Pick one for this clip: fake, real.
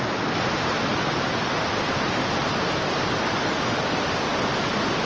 real